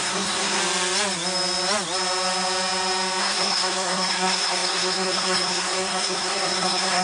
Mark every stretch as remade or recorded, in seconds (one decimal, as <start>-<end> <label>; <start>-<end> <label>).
0.0-0.6 remade; 0.6-3.2 recorded; 3.2-7.0 remade